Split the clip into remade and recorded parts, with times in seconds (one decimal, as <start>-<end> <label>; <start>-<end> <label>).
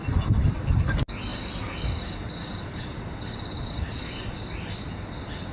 0.0-5.5 recorded